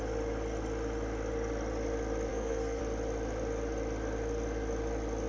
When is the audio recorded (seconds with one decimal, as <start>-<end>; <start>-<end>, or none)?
0.0-2.3; 2.8-5.3